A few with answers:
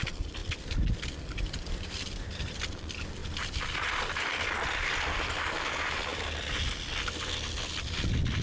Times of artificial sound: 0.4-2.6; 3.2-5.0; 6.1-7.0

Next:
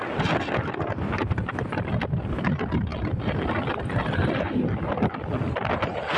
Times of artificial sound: none

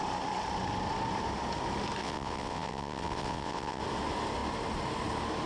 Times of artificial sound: 2.0-3.8

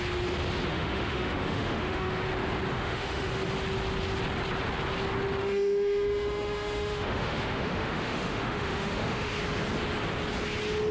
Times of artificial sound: 0.7-2.2; 2.7-3.3; 5.4-9.3

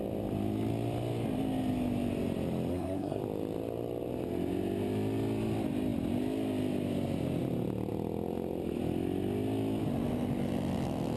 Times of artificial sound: 2.7-3.2

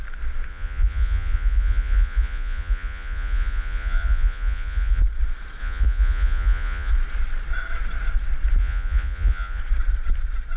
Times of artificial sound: 0.5-5.0; 5.6-6.9; 8.6-9.6

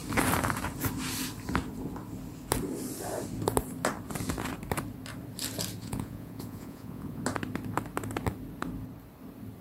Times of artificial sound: 5.8-7.2